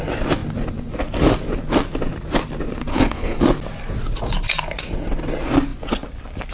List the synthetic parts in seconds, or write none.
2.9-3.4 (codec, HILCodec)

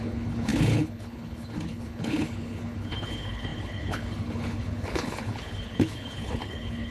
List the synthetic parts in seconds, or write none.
0.0-6.9 (codec, HILCodec)